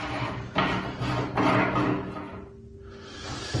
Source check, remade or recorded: recorded